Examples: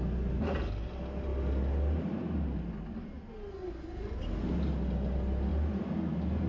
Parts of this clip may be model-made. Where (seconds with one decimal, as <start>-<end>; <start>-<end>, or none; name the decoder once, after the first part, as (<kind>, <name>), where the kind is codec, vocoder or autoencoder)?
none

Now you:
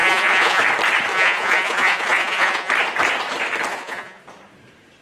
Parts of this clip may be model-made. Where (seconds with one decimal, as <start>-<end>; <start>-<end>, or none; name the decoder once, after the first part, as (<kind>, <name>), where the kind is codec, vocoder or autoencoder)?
0.0-0.6 (vocoder, Vocos); 1.1-2.7; 3.7-4.2

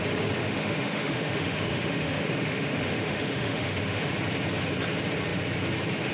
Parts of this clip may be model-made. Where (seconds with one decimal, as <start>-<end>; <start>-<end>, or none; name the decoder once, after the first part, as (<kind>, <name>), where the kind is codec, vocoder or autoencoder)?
0.4-4.1 (autoencoder, DAC-VAE)

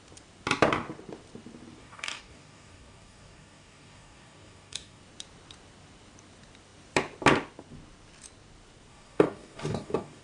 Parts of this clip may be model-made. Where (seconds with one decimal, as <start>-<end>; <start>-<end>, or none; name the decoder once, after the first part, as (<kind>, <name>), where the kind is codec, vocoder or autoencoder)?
1.8-5.0 (codec, DAC); 8.9-10.2

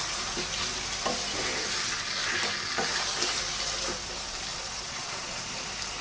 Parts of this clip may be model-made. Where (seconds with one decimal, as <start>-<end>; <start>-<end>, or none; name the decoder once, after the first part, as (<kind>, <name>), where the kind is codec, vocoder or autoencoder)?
4.5-5.4 (vocoder, Vocos)

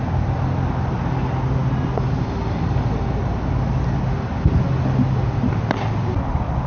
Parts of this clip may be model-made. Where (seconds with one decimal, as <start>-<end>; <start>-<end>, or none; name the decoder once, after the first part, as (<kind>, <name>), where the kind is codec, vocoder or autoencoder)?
none

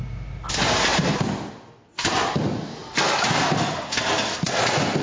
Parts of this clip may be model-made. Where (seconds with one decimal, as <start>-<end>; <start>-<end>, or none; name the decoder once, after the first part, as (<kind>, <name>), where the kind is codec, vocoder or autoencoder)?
none

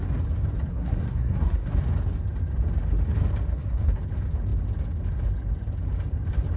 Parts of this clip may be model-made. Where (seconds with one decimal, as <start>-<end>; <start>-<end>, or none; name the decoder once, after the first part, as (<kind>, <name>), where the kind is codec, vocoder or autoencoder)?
0.7-1.7 (codec, SNAC); 3.5-4.0